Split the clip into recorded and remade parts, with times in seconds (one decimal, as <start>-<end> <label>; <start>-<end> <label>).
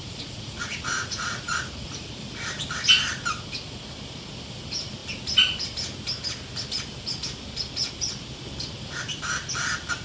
0.0-2.1 remade; 2.1-10.0 recorded